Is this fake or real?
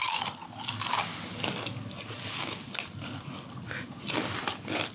real